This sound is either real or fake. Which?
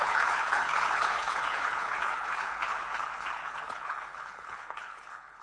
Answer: fake